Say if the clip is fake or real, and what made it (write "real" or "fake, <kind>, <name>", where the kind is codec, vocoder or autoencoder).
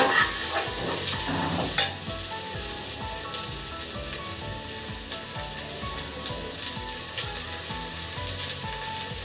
real